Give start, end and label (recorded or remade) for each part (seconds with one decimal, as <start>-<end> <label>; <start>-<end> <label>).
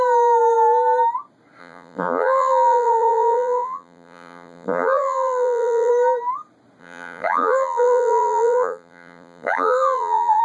0.0-1.6 recorded; 1.6-5.9 remade; 5.9-6.8 recorded; 6.8-10.4 remade